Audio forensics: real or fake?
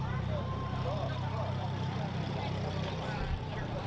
fake